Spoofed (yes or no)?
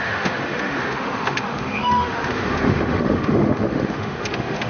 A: yes